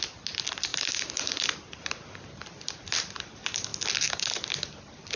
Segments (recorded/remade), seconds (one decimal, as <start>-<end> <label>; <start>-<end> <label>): 0.0-0.7 recorded; 0.7-2.0 remade; 2.0-5.2 recorded